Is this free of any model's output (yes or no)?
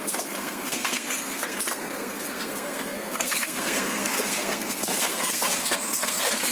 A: no